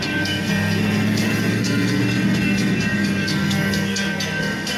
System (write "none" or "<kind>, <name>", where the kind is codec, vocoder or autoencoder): codec, SNAC